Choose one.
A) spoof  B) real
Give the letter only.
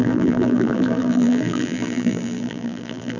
A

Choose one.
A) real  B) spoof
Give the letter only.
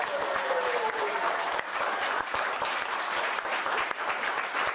B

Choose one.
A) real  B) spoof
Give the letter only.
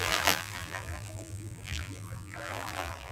B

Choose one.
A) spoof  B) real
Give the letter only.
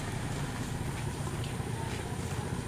B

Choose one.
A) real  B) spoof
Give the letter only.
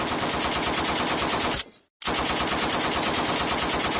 A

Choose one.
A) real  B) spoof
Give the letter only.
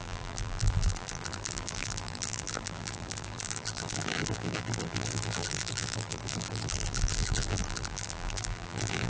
B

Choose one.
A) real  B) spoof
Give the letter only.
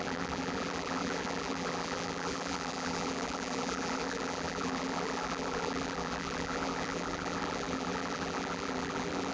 B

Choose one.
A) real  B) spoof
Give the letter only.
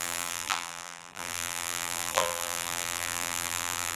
B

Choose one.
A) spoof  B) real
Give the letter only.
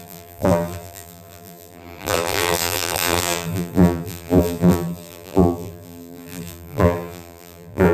A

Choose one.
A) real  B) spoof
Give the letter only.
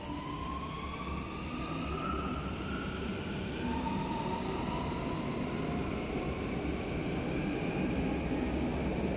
A